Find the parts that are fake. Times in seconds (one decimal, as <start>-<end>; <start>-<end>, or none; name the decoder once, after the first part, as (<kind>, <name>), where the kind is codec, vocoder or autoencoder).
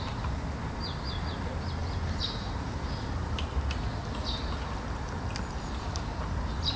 none